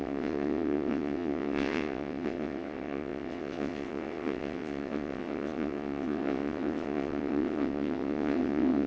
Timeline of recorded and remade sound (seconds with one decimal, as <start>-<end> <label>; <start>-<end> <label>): 0.0-8.9 remade